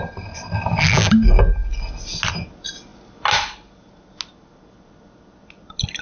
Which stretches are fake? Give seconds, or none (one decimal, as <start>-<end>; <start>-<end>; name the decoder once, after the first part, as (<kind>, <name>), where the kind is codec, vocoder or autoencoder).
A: none